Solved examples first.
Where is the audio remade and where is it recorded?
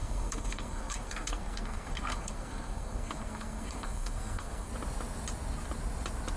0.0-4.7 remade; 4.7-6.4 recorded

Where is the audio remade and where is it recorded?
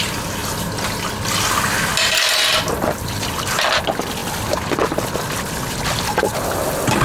0.0-7.0 recorded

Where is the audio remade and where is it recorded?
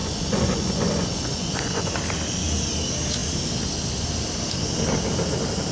0.0-1.9 remade; 1.9-5.7 recorded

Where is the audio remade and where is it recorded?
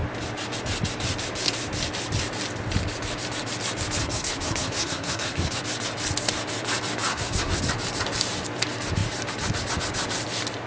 0.0-4.0 recorded; 4.0-5.6 remade; 5.6-7.1 recorded; 7.1-7.6 remade; 7.6-10.7 recorded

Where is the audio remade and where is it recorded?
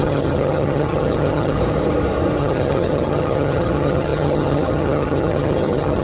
0.0-1.6 remade; 1.6-2.4 recorded; 2.4-6.0 remade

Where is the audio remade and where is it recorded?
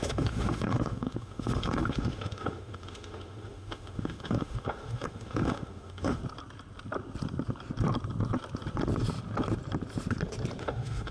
0.0-6.2 remade; 6.2-10.6 recorded; 10.6-11.1 remade